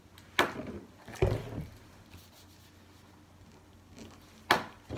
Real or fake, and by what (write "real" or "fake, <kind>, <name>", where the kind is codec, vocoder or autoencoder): real